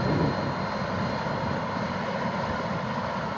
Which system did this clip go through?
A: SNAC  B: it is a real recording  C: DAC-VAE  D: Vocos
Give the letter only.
B